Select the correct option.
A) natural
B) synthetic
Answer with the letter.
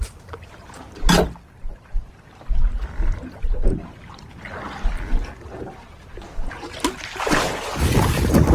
A